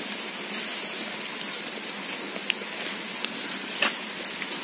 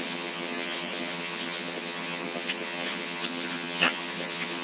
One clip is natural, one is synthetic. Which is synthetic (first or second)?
second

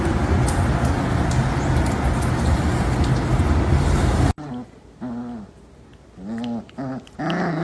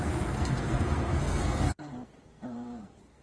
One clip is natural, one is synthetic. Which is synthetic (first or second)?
second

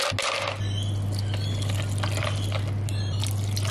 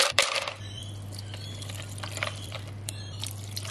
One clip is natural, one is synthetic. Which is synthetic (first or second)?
second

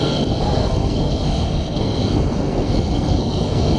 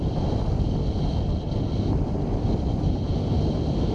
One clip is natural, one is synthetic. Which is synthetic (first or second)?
first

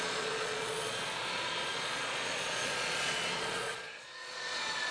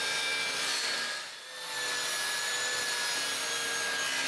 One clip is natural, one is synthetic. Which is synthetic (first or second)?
first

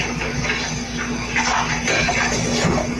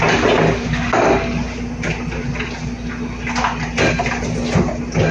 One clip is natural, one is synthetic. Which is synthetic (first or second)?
first